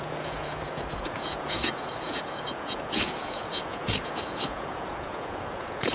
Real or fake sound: fake